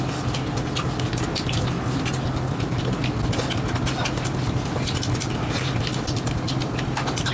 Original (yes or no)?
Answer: yes